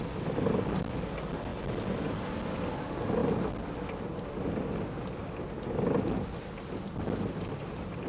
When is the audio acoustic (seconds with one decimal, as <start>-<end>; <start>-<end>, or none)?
0.0-8.1